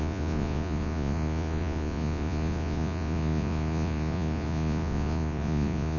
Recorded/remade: remade